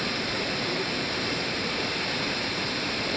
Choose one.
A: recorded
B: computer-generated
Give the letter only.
B